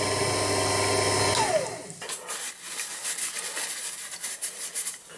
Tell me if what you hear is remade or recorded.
recorded